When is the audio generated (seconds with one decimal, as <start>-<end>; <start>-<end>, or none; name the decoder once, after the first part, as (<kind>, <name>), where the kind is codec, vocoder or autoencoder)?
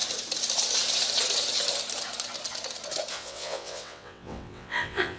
3.1-5.2 (vocoder, WaveNeXt)